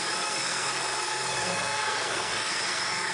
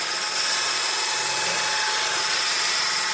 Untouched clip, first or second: second